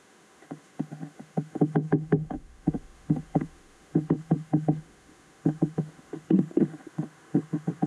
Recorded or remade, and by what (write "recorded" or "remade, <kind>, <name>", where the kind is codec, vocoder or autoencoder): remade, autoencoder, DAC-VAE